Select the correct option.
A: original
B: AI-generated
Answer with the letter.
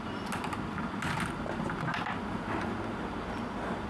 A